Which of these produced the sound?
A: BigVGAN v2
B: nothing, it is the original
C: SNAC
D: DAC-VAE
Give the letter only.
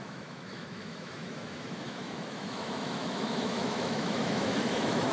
D